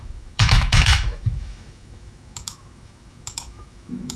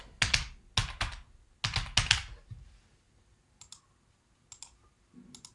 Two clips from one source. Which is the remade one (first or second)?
first